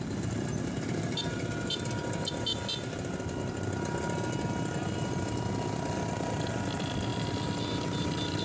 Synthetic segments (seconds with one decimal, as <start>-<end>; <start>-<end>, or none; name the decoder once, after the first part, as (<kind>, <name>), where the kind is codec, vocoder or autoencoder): none